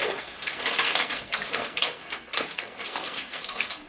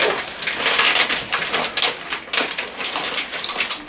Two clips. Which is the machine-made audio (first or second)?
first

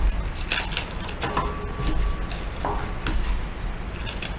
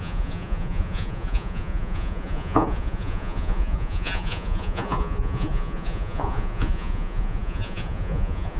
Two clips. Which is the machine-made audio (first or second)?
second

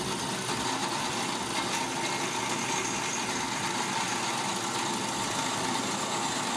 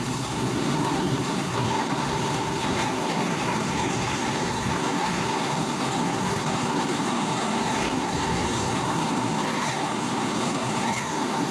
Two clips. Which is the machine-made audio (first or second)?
second